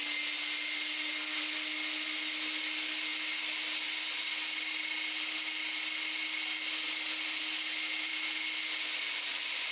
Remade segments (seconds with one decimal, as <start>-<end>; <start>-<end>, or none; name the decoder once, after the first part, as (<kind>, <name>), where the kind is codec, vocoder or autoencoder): none